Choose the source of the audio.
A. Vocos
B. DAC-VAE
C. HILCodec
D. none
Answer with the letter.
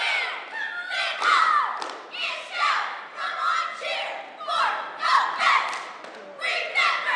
D